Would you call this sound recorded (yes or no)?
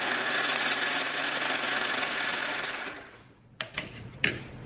no